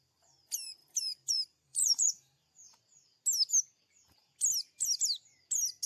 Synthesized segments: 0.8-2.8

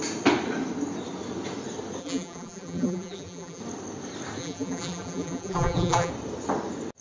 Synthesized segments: 2.0-3.6; 4.4-6.1

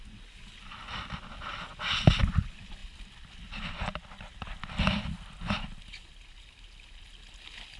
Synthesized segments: none

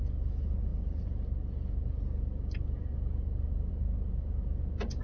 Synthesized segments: none